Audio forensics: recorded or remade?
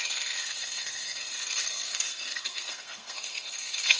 remade